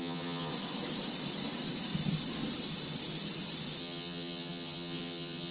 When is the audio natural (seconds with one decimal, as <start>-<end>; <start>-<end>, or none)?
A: 0.5-3.8